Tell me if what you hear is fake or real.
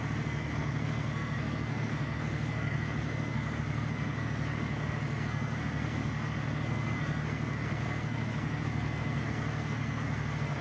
fake